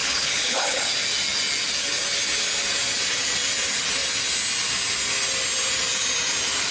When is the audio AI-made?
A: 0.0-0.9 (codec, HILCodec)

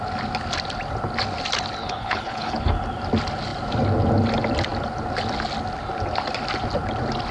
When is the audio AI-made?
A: 1.8-2.7 (codec, HILCodec)

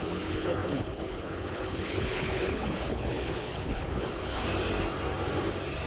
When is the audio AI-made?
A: 0.0-4.4 (codec, HILCodec)

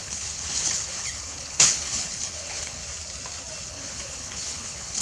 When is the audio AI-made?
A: 0.0-2.8 (codec, HILCodec); 3.7-5.0

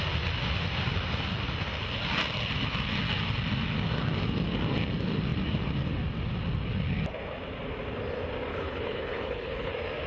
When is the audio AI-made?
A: 8.5-9.7 (codec, HILCodec)

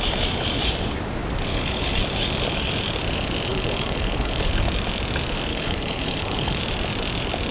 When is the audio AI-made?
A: 1.5-2.0 (codec, HILCodec); 3.5-4.5; 5.5-6.6

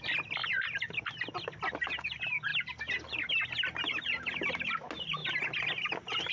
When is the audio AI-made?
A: none

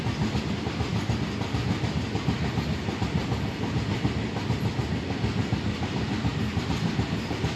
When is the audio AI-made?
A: none